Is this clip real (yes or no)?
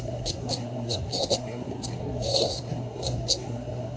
no